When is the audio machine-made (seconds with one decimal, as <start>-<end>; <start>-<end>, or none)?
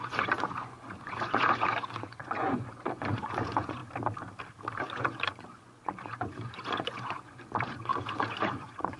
0.0-3.8; 4.8-9.0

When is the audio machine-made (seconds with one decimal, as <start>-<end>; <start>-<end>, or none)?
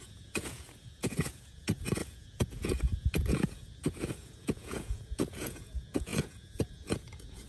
0.0-7.5